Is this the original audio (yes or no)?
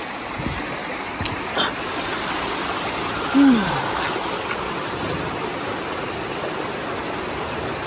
yes